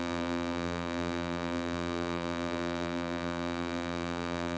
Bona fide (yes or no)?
no